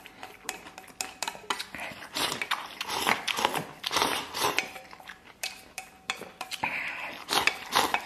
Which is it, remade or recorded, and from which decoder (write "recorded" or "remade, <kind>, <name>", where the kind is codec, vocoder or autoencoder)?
remade, vocoder, BigVGAN v2